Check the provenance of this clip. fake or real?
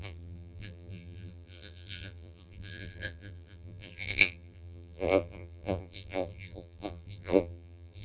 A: fake